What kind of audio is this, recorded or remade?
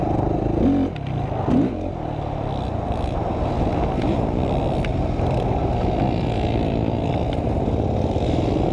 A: recorded